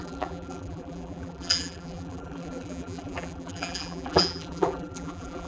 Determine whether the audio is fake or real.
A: fake